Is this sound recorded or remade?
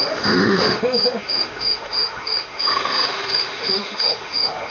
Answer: remade